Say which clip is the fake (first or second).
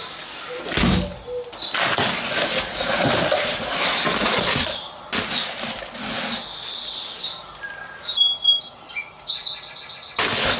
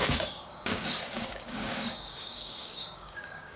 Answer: second